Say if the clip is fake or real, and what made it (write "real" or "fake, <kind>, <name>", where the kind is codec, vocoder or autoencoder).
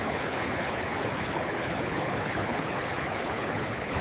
fake, codec, HILCodec